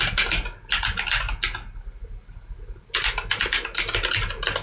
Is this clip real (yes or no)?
yes